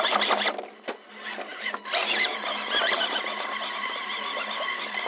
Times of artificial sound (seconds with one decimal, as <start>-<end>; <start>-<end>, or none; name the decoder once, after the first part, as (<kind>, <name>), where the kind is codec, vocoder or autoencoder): 3.8-5.1 (vocoder, BigVGAN v2)